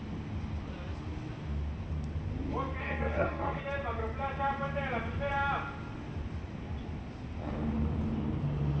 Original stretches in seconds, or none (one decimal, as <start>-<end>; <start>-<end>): 0.0-2.8; 3.6-8.8